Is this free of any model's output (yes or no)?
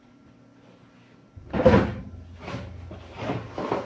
yes